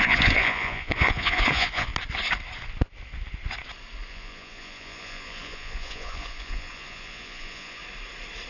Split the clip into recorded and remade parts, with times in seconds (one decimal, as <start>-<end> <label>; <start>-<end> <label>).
0.0-1.9 remade; 1.9-4.1 recorded; 4.1-7.8 remade; 7.8-8.5 recorded